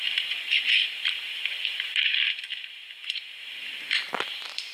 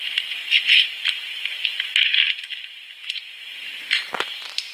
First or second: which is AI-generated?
first